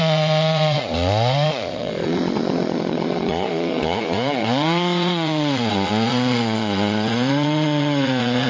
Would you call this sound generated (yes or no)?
yes